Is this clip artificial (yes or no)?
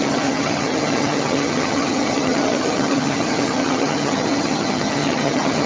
yes